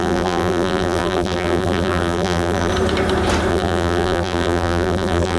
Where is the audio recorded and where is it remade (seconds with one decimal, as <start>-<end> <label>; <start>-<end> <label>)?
0.0-2.7 remade; 2.7-3.5 recorded; 3.5-5.4 remade